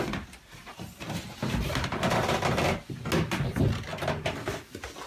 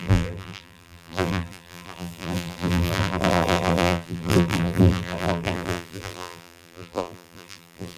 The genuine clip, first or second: first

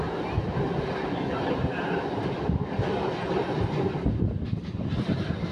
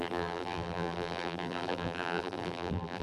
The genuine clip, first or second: first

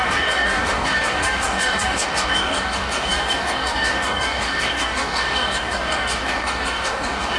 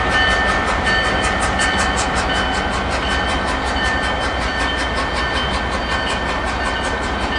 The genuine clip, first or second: second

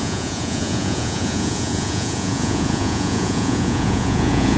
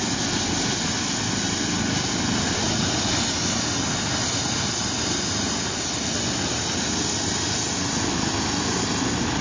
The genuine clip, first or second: second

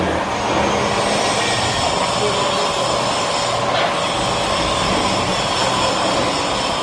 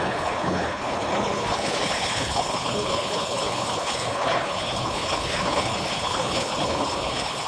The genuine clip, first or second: first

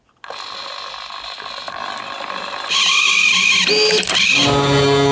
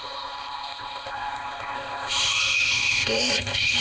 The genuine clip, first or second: first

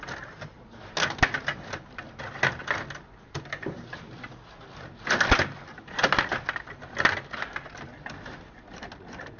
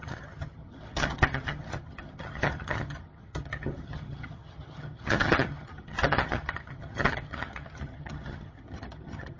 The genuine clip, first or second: first